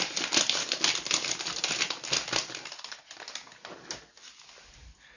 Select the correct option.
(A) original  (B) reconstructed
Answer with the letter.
A